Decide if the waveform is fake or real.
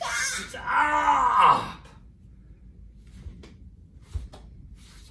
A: real